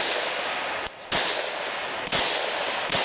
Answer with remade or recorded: recorded